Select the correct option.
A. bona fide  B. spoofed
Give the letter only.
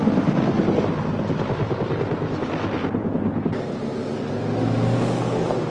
A